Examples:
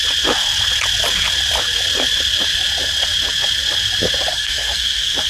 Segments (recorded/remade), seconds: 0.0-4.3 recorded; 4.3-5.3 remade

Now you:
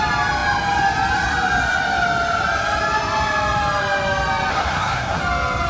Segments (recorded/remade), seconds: 0.0-4.5 recorded; 4.5-5.2 remade; 5.2-5.7 recorded

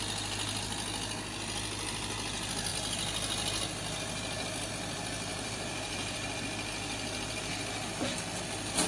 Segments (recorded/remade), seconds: 0.0-5.3 recorded; 5.3-6.4 remade; 6.4-8.9 recorded

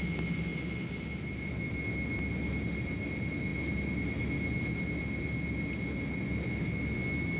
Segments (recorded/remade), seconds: 0.0-7.4 recorded